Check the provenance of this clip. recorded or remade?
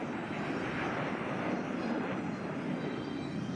recorded